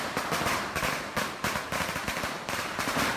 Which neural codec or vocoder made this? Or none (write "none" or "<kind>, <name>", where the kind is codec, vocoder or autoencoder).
vocoder, BigVGAN v2